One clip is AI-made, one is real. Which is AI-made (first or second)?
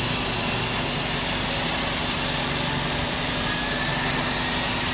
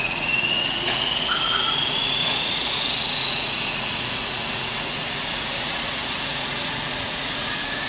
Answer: second